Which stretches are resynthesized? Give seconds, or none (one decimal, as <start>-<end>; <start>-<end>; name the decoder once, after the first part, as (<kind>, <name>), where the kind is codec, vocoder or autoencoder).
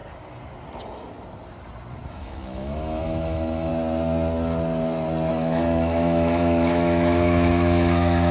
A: 2.1-3.7 (autoencoder, DAC-VAE); 5.3-8.3